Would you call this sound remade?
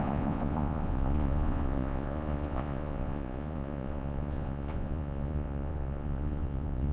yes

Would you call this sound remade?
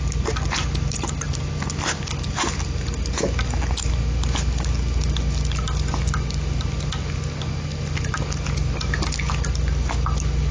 no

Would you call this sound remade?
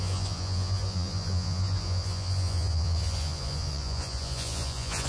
yes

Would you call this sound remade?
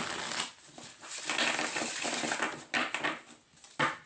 no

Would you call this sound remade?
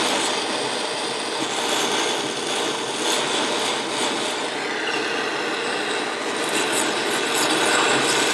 no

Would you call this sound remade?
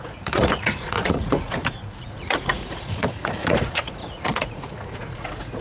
yes